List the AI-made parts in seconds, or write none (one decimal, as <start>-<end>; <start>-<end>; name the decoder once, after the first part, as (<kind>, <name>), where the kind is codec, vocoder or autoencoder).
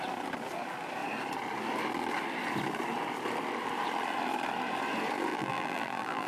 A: 5.3-6.3 (vocoder, BigVGAN v2)